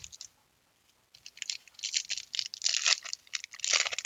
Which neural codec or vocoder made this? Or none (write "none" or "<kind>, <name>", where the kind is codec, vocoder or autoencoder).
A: none